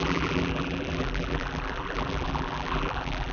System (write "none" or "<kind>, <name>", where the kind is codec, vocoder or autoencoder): vocoder, BigVGAN v2